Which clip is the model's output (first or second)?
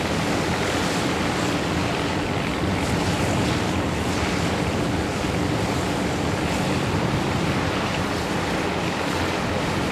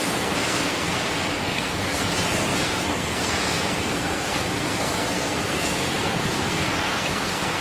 second